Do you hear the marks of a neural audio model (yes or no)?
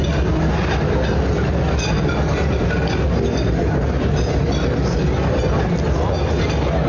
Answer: no